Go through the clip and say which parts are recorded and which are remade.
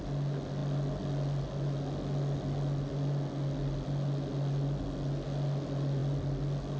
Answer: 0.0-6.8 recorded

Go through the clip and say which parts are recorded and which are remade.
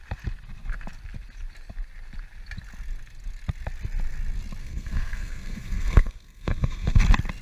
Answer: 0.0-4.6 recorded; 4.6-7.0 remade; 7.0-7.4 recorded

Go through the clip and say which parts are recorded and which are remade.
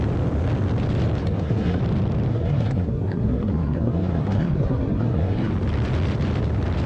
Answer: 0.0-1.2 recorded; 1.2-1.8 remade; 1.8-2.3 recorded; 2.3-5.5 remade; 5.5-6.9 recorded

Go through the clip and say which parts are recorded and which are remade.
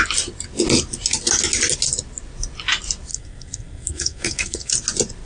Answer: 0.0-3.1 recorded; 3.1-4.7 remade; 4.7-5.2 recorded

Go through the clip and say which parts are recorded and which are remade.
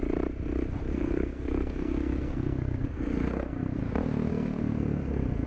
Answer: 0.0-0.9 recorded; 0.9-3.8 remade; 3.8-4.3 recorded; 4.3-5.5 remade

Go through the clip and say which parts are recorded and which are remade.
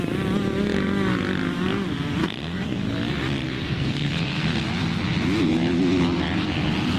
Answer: 0.0-2.2 recorded; 2.2-2.8 remade; 2.8-3.6 recorded; 3.6-4.6 remade; 4.6-7.0 recorded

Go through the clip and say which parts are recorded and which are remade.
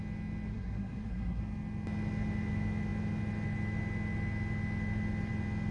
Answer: 0.0-0.5 recorded; 0.5-1.4 remade; 1.4-5.7 recorded